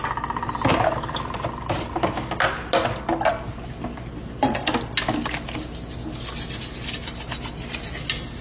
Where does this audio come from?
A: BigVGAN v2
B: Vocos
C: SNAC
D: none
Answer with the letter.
D